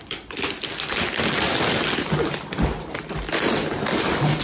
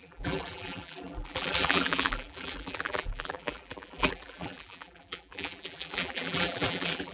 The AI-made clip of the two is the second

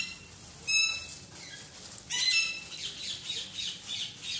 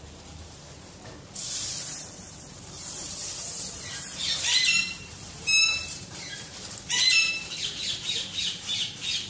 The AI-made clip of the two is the second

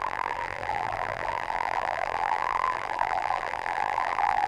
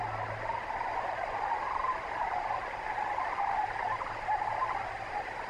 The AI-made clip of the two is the first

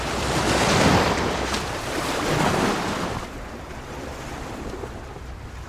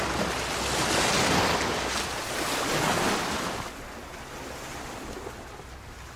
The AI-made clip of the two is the first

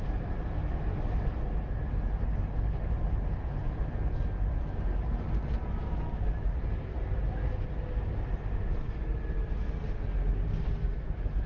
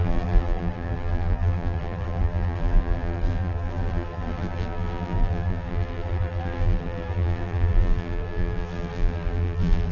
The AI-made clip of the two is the second